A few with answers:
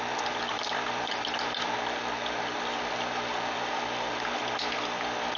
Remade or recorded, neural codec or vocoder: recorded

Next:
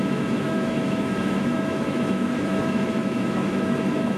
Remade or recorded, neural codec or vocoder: remade, autoencoder, DAC-VAE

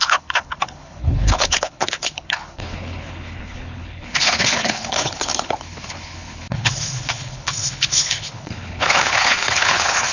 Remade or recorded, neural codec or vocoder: remade, codec, HILCodec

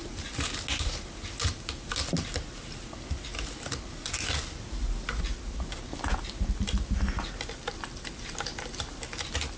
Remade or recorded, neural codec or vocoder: recorded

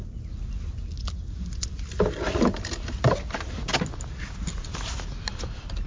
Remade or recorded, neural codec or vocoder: recorded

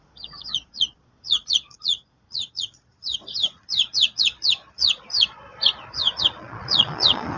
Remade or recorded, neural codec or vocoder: remade, vocoder, Vocos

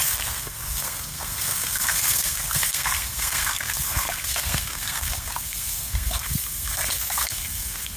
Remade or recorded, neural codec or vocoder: remade, codec, SNAC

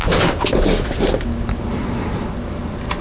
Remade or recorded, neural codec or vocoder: recorded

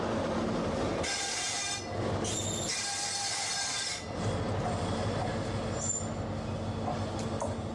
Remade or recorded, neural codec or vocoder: recorded